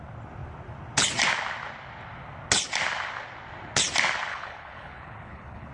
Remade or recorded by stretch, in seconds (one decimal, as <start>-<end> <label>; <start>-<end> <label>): 0.0-4.3 recorded; 4.3-5.7 remade